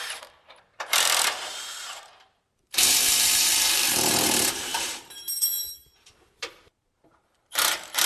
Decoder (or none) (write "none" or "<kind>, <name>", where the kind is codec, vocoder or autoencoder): vocoder, BigVGAN v2